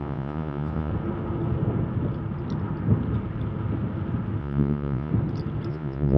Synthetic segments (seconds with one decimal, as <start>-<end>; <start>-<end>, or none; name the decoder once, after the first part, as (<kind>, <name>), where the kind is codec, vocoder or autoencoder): 0.0-0.9 (vocoder, Vocos); 4.4-5.1; 5.7-6.2